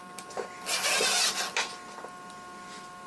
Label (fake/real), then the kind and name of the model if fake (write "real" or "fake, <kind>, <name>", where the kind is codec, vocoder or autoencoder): real